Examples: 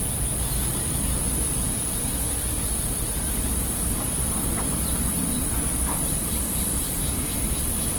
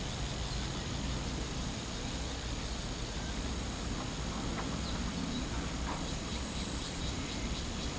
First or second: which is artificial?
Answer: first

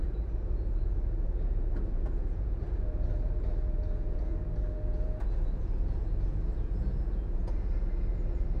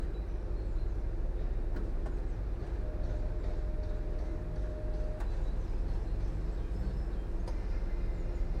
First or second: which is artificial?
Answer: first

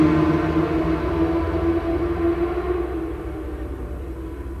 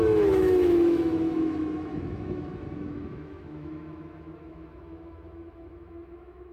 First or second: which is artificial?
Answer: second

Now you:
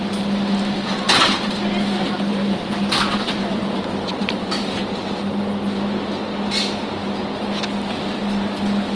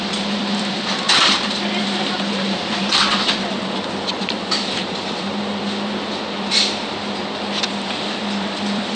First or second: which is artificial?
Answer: second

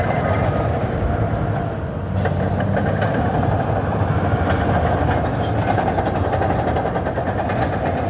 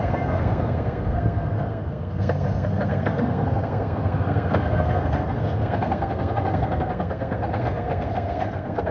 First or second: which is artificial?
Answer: second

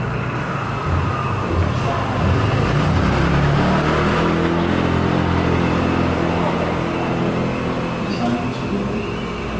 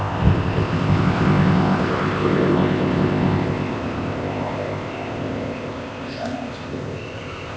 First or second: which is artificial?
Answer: second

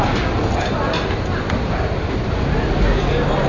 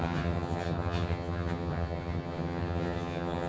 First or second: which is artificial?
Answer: second